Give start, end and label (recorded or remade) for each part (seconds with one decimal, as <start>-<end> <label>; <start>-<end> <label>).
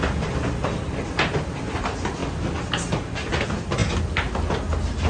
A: 0.0-5.1 recorded